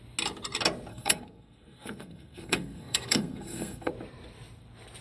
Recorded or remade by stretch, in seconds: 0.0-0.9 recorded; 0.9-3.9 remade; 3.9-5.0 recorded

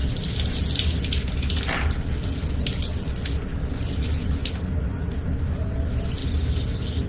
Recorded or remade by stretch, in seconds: 0.0-7.1 recorded

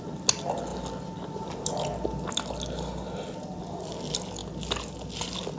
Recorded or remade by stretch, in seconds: 0.0-5.6 recorded